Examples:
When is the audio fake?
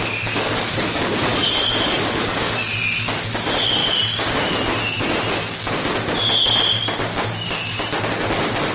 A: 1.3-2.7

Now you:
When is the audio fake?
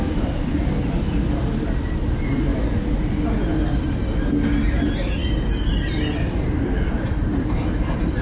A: none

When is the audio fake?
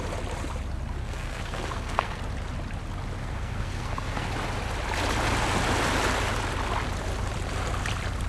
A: 1.0-2.2; 3.2-4.3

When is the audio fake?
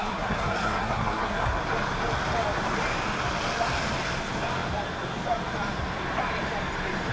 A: 0.0-1.6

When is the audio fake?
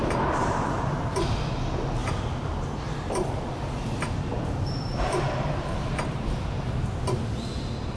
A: 0.0-1.5; 2.0-6.7